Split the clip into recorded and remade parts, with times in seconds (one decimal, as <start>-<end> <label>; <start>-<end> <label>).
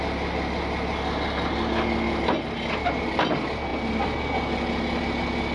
0.0-5.5 recorded